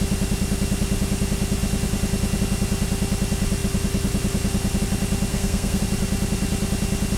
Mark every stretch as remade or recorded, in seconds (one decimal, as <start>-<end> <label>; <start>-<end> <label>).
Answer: 0.0-5.3 recorded; 5.3-5.8 remade; 5.8-7.2 recorded